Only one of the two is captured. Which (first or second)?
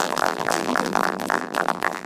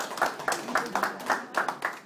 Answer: second